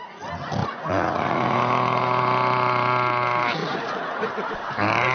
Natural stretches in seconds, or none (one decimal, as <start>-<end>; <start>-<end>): 0.0-0.6; 1.6-3.6; 4.5-5.1